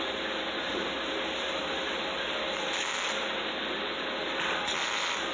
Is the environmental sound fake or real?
real